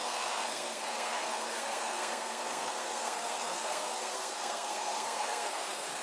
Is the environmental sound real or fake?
fake